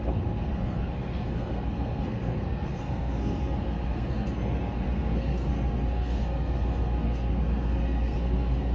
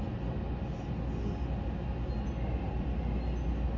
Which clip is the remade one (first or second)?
first